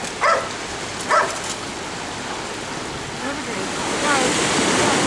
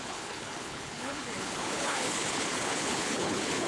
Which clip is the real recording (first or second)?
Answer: first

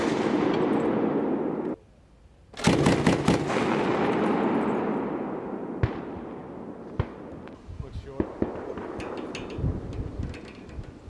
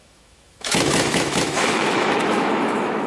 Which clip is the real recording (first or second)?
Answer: first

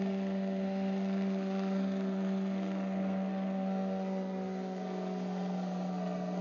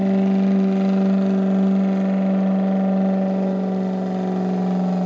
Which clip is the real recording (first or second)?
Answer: second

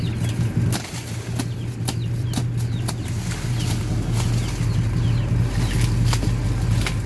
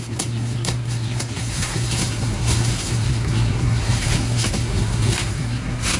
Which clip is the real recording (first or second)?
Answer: first